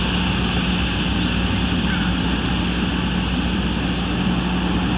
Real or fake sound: real